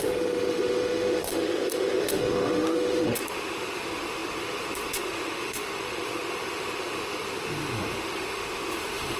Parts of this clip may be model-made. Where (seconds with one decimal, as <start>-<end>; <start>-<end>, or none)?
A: 0.0-9.2